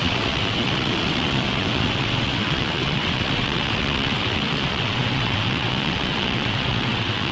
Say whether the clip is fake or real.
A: fake